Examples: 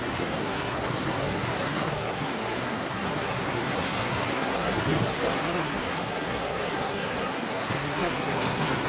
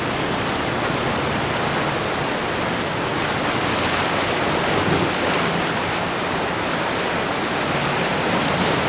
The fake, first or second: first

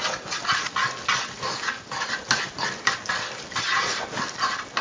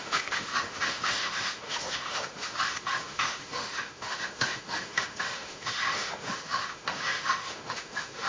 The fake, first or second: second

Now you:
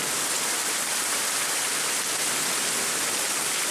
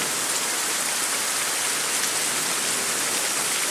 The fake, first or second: first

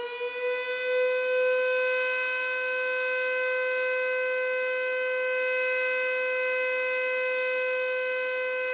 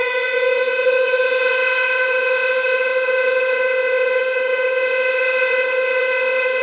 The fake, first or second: second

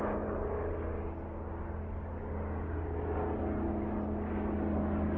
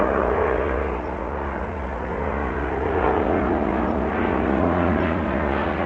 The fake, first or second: second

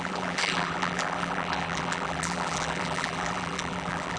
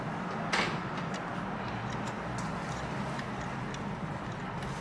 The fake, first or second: first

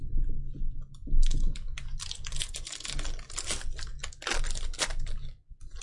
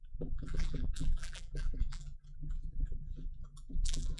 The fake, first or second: second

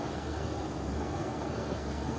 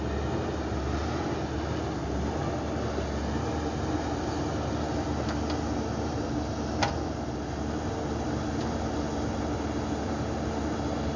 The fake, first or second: first